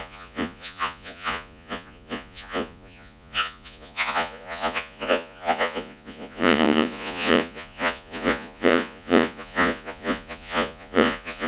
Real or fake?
fake